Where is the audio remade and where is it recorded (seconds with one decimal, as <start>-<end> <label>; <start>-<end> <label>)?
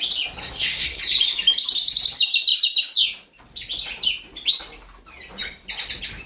0.0-0.4 recorded; 0.4-1.0 remade; 1.0-6.3 recorded